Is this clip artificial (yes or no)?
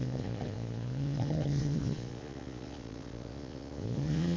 yes